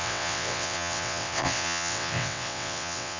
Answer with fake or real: fake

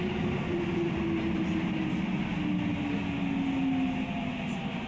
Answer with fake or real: real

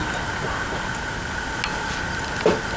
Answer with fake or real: real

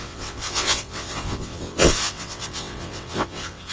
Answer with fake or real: fake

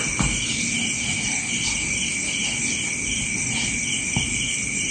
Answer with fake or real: real